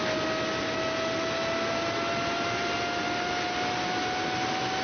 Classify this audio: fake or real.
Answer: real